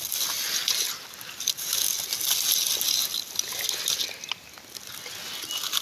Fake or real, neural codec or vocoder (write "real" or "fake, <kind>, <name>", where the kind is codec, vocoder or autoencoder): real